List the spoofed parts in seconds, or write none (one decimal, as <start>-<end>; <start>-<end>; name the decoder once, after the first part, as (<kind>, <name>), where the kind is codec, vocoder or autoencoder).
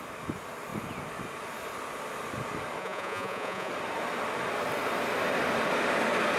2.8-3.7 (vocoder, Vocos)